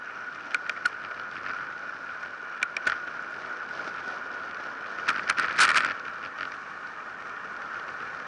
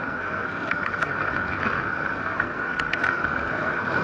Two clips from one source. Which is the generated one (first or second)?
second